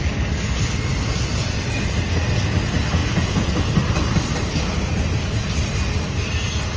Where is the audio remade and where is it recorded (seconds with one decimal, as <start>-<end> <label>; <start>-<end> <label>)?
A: 0.0-6.8 recorded